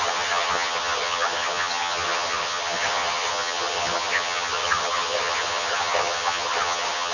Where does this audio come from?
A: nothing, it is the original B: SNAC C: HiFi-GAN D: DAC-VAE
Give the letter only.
C